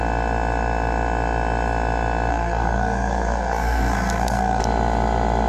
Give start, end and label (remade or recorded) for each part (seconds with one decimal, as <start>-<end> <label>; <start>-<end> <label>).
0.0-2.3 recorded; 2.3-4.6 remade; 4.6-5.5 recorded